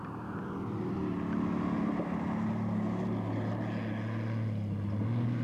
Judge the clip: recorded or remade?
recorded